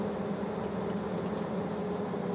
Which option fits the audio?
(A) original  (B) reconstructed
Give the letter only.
A